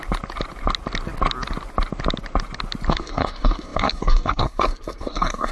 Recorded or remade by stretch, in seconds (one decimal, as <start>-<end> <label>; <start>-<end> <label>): 0.0-2.9 recorded; 2.9-5.5 remade